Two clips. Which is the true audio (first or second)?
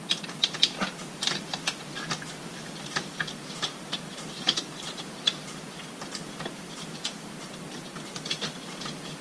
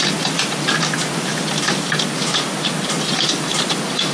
second